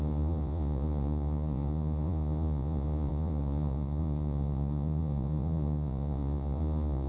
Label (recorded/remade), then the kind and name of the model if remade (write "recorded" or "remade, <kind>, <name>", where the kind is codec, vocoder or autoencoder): remade, vocoder, Vocos